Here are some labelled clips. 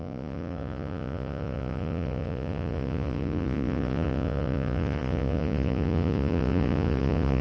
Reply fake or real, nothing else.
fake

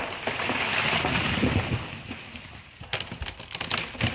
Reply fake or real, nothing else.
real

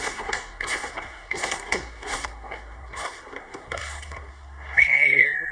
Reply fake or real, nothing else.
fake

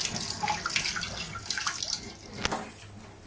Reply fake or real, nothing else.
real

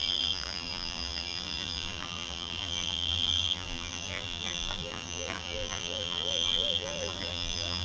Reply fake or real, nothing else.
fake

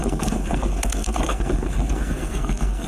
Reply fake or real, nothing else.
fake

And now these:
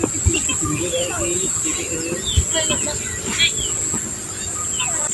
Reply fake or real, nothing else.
real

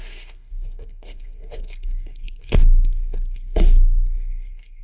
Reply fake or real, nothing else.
fake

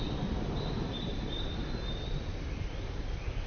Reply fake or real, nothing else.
real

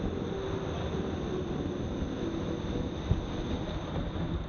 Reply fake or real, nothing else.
real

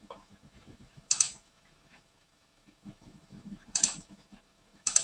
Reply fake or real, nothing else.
fake